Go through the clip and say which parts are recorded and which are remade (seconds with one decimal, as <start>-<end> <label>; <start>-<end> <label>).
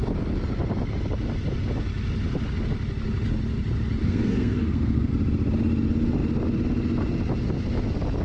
0.0-4.0 recorded; 4.0-5.1 remade; 5.1-8.2 recorded